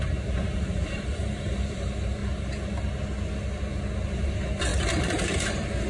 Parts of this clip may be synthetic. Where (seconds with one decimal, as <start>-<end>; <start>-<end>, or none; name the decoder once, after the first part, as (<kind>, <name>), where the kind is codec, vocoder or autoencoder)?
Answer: 0.0-2.2 (vocoder, BigVGAN v2); 4.2-5.9